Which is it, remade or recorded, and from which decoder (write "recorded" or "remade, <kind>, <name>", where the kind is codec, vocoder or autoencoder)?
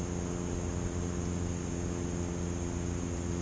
recorded